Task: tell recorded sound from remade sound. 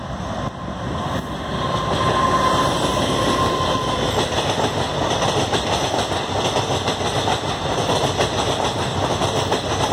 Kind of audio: recorded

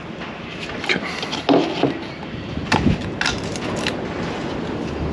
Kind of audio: recorded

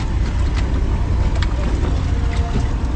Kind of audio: recorded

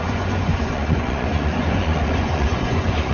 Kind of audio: remade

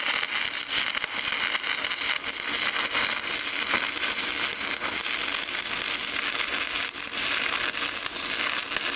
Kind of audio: recorded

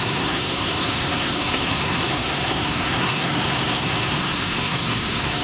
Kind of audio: remade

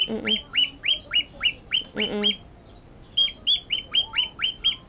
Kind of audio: recorded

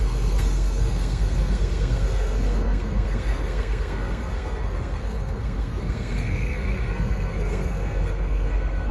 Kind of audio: remade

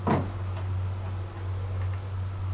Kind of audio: recorded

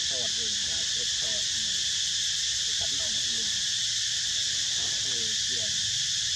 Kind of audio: remade